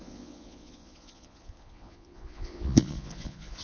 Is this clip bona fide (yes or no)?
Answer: no